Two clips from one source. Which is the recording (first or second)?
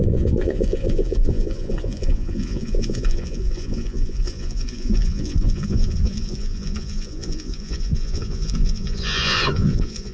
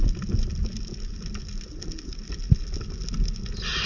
second